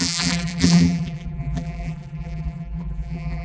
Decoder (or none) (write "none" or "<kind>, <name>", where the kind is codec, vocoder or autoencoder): vocoder, BigVGAN v2